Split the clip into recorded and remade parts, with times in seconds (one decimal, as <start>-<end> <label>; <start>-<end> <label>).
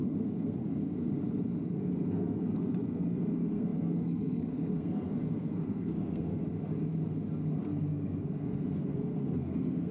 0.0-0.6 remade; 0.6-1.8 recorded; 1.8-6.4 remade; 6.4-7.6 recorded; 7.6-9.9 remade